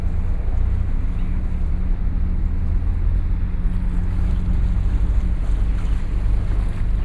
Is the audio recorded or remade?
recorded